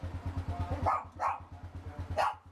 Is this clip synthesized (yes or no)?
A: no